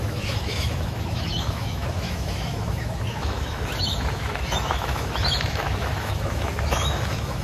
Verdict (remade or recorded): remade